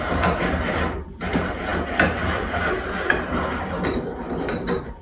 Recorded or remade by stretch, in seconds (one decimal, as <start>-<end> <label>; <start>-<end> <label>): 0.0-5.0 remade